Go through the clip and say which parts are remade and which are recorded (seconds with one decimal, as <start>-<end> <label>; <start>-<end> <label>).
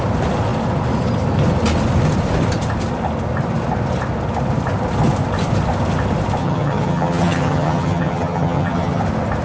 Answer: 0.0-6.4 recorded; 6.4-9.0 remade; 9.0-9.4 recorded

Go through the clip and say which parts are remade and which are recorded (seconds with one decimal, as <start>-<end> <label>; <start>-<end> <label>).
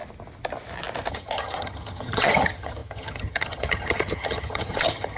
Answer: 0.0-1.1 recorded; 1.1-5.2 remade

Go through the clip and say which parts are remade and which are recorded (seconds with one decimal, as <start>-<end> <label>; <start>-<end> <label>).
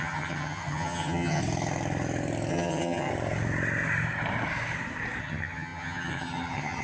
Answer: 0.0-1.4 remade; 1.4-2.5 recorded; 2.5-3.1 remade; 3.1-5.2 recorded; 5.2-6.8 remade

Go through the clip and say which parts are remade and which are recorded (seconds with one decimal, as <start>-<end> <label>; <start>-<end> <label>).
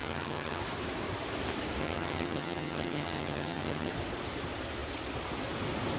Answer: 0.0-0.6 remade; 0.6-1.8 recorded; 1.8-3.9 remade; 3.9-6.0 recorded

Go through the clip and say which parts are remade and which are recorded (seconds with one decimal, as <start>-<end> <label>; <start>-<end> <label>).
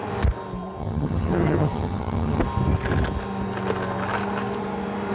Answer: 0.0-0.8 recorded; 0.8-2.4 remade; 2.4-5.1 recorded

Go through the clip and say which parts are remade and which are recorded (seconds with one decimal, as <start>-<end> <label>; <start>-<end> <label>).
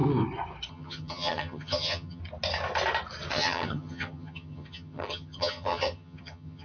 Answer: 0.0-0.7 recorded; 0.7-2.2 remade; 2.2-3.3 recorded; 3.3-6.6 remade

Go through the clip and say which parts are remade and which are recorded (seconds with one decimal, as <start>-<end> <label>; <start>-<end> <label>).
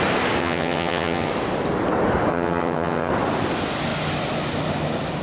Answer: 0.0-0.4 recorded; 0.4-1.3 remade; 1.3-2.3 recorded; 2.3-3.1 remade; 3.1-5.2 recorded